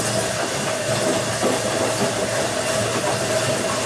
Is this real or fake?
real